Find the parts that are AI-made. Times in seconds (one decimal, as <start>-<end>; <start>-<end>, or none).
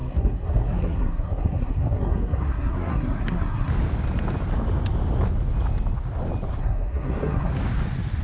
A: 0.0-3.7; 6.6-7.5